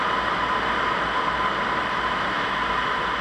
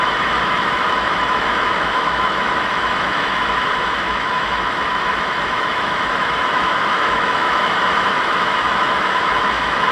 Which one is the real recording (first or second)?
first